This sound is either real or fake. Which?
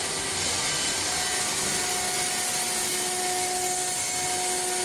real